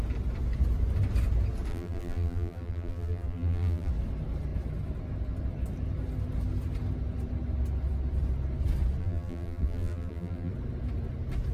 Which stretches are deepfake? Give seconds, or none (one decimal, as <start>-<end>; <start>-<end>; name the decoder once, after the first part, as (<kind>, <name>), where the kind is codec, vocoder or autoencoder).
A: 1.7-3.9 (vocoder, BigVGAN v2); 9.0-10.5